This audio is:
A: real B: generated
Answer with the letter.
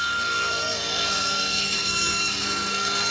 B